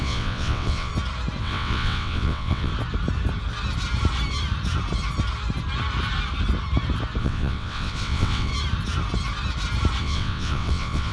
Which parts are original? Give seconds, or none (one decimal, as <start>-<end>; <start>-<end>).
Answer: 0.9-1.4; 2.7-7.2; 8.5-10.0